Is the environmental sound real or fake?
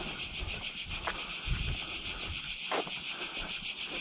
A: real